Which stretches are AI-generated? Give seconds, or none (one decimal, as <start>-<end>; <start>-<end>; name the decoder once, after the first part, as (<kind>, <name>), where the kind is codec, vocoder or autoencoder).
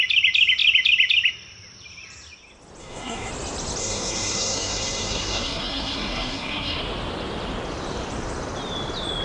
2.8-3.3 (codec, SNAC); 3.8-6.8